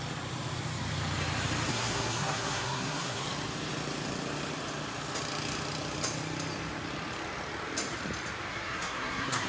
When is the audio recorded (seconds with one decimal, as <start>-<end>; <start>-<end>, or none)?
0.0-1.7; 3.2-8.5